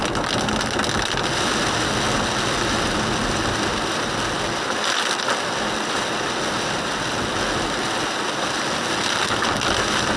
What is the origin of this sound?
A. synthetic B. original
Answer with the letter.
B